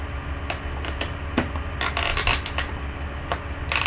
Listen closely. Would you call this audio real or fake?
real